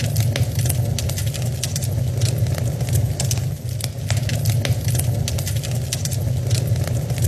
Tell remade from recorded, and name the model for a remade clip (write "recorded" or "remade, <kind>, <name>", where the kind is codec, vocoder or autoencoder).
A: recorded